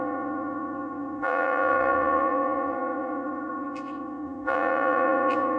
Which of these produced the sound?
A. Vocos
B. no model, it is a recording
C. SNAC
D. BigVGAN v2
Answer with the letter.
A